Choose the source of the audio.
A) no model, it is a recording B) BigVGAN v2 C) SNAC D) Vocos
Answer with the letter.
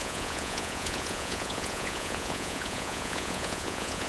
D